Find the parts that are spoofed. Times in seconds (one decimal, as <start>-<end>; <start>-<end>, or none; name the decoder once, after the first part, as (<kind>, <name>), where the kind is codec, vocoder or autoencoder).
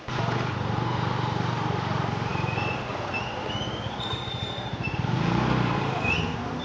none